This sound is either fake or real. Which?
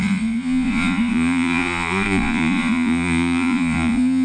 fake